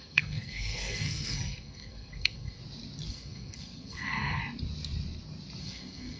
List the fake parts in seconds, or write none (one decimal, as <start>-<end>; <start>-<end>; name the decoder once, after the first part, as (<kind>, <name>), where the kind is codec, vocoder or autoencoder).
0.0-2.6 (codec, SNAC); 3.1-4.4; 5.6-6.2